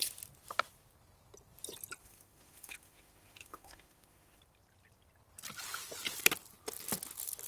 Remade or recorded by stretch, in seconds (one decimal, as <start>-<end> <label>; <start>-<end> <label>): 0.0-2.0 recorded; 2.0-4.4 remade; 4.4-7.5 recorded